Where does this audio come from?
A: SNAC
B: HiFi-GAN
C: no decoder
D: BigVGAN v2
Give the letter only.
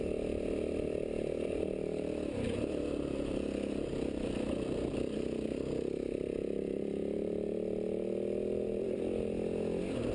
C